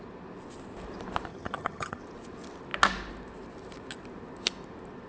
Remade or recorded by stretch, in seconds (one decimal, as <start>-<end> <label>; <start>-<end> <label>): 0.0-1.3 recorded; 1.3-2.0 remade; 2.0-5.1 recorded